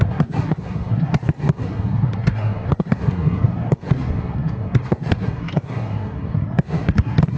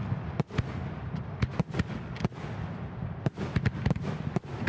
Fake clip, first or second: first